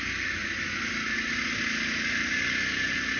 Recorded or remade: recorded